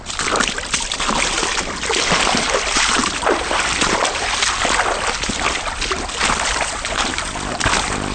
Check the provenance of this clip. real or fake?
real